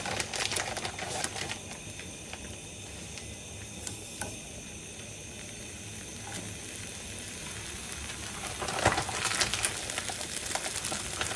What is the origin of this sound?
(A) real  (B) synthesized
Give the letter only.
A